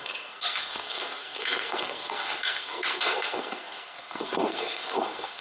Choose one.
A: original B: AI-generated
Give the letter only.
B